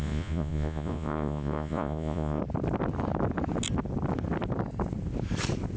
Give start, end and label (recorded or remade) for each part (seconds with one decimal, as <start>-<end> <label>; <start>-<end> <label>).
0.0-2.4 remade; 2.4-5.8 recorded